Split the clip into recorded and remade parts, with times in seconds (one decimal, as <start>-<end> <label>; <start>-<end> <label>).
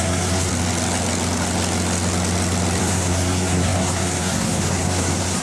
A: 0.0-0.5 remade; 0.5-2.8 recorded; 2.8-5.4 remade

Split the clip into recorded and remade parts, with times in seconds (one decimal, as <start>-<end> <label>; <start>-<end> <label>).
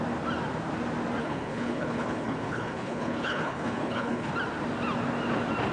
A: 0.0-1.2 recorded; 1.2-4.3 remade; 4.3-5.7 recorded